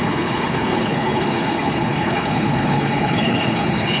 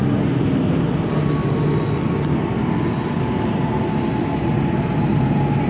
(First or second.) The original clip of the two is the second